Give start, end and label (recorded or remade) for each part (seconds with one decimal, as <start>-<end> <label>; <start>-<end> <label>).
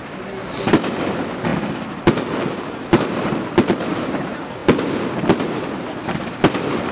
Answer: 0.0-6.9 recorded